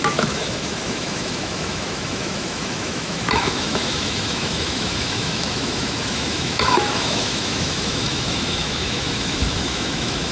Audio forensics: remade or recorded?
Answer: remade